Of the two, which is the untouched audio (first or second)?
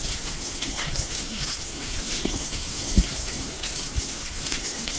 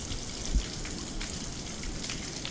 second